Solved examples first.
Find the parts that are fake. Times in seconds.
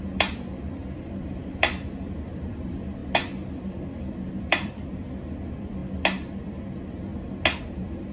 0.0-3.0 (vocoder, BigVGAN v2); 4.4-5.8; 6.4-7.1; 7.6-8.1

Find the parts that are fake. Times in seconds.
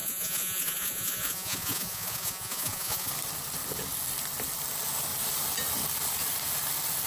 0.0-3.1 (vocoder, Vocos)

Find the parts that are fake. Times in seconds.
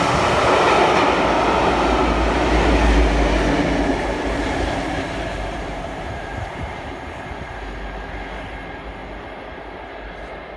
3.9-6.7 (vocoder, BigVGAN v2)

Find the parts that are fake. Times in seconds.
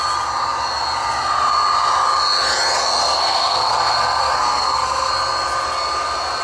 3.0-5.1 (codec, SNAC)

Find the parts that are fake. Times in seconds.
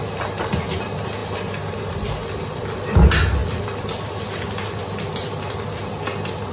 none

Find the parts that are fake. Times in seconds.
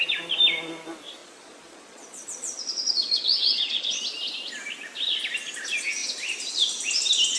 1.2-4.0 (vocoder, Vocos)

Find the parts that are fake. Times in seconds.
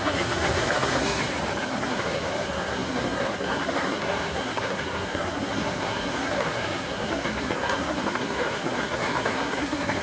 0.0-1.2 (codec, SNAC); 1.7-10.0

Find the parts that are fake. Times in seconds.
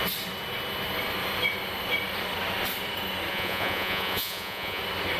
3.3-4.8 (vocoder, Vocos)